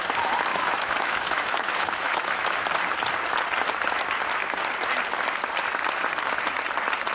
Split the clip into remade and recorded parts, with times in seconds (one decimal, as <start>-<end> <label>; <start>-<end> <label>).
0.0-0.5 recorded; 0.5-2.6 remade; 2.6-7.1 recorded